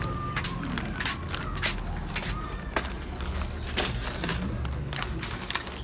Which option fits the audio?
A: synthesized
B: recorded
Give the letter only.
B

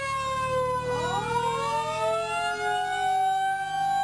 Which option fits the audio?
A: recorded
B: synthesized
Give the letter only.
A